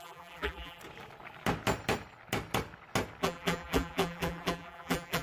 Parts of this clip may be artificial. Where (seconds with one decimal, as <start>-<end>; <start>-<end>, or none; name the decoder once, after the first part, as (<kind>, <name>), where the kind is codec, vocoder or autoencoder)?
0.0-0.8 (vocoder, BigVGAN v2); 3.2-5.2